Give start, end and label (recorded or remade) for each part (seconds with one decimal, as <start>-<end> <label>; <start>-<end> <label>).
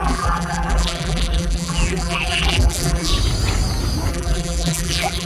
0.0-3.1 remade; 3.1-4.1 recorded; 4.1-5.3 remade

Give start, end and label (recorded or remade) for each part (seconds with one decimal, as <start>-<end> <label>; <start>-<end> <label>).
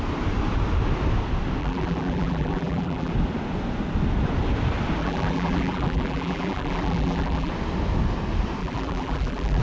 0.0-1.6 recorded; 1.6-3.1 remade; 3.1-5.0 recorded; 5.0-7.5 remade; 7.5-8.6 recorded; 8.6-9.6 remade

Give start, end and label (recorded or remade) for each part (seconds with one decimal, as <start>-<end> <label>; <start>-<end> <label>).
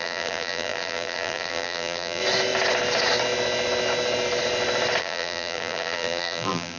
0.0-2.2 remade; 2.2-5.0 recorded; 5.0-6.8 remade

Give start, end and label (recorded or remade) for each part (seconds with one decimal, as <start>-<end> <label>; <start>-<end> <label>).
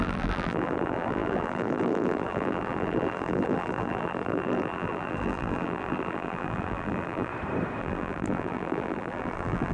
0.0-7.3 remade; 7.3-7.8 recorded; 7.8-9.7 remade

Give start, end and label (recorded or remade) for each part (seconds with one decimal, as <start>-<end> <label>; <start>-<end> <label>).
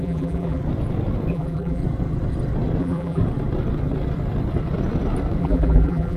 0.0-0.6 remade; 0.6-1.3 recorded; 1.3-1.8 remade; 1.8-2.8 recorded; 2.8-3.2 remade; 3.2-5.4 recorded; 5.4-6.2 remade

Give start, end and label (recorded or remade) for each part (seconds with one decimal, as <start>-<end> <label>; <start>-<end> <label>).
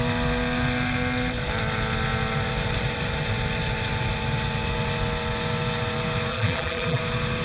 0.0-6.3 recorded; 6.3-7.0 remade; 7.0-7.4 recorded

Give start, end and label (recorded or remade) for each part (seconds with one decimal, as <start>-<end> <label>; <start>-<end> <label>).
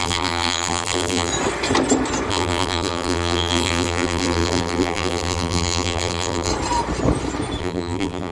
0.0-1.3 remade; 1.3-2.3 recorded; 2.3-6.5 remade; 6.5-7.6 recorded; 7.6-8.3 remade